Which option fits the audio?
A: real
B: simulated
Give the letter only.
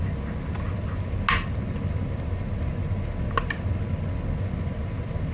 A